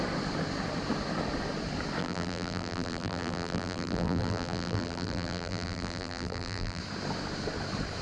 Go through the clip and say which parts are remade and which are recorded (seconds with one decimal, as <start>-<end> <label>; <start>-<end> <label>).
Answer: 0.0-2.0 recorded; 2.0-6.8 remade; 6.8-8.0 recorded